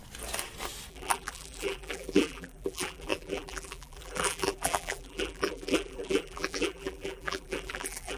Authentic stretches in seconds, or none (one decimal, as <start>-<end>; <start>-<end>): 0.0-0.9